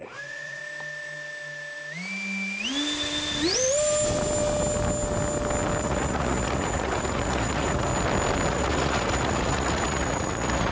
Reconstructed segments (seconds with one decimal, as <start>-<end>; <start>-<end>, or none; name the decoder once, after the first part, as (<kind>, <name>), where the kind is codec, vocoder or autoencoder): 0.0-0.6 (vocoder, Vocos); 5.8-7.9; 8.5-10.7